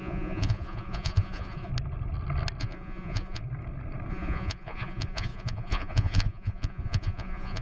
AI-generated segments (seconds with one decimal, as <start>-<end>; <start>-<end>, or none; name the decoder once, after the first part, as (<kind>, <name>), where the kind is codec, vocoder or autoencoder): 0.0-1.7 (vocoder, Vocos); 2.6-3.4; 4.1-7.6